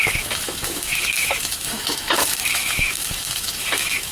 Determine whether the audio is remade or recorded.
remade